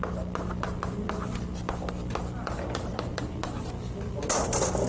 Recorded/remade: recorded